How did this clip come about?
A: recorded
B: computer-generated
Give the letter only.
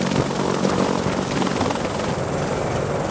A